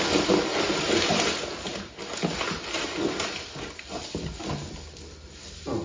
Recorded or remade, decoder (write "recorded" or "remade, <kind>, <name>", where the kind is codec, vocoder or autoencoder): recorded